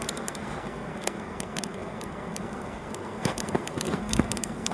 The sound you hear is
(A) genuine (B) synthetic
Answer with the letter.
B